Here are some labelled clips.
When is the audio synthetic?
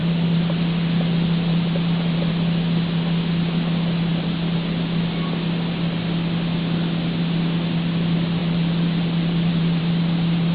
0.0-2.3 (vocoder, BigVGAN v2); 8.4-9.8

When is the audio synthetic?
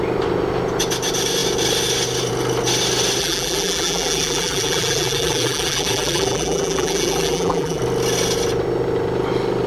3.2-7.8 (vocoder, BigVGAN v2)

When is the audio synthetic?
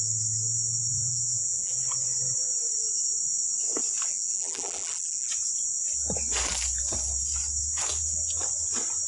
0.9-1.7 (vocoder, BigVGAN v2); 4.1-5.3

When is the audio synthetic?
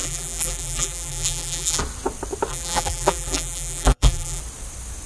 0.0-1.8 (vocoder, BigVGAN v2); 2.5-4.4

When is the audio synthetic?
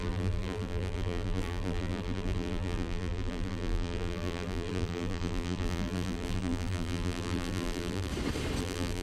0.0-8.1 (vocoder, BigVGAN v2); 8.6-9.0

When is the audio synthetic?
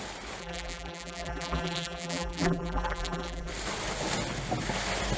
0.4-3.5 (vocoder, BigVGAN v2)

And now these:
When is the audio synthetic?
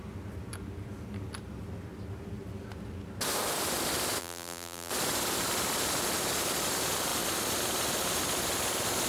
4.2-4.9 (vocoder, BigVGAN v2)